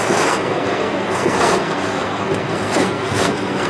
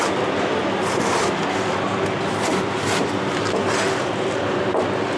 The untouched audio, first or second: second